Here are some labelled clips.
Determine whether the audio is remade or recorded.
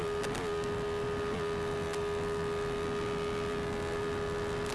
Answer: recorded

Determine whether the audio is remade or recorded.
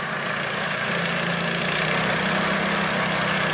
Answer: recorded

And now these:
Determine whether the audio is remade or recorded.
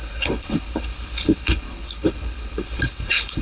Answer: remade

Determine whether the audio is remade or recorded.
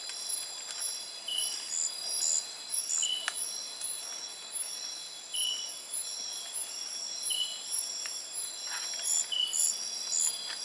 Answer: recorded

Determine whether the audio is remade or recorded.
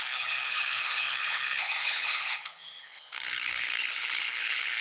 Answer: remade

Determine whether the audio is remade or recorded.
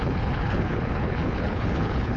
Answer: remade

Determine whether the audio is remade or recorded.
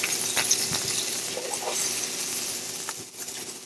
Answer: recorded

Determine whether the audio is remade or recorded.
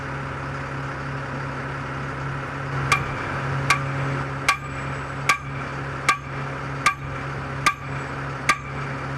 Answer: recorded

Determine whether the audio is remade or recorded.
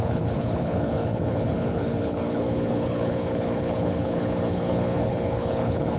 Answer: remade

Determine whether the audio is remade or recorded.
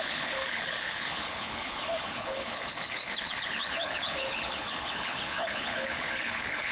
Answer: remade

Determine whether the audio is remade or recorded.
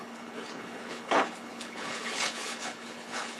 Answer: remade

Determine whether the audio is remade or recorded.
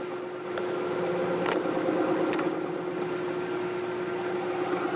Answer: recorded